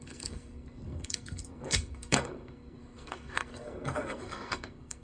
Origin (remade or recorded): remade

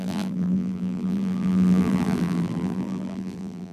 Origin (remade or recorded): remade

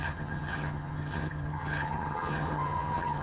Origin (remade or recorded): remade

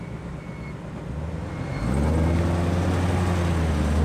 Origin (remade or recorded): recorded